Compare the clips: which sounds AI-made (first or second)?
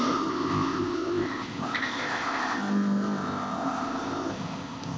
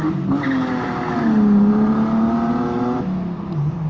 first